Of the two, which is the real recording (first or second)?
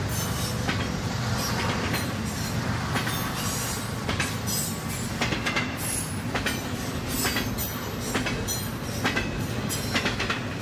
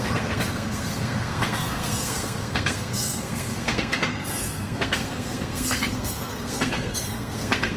first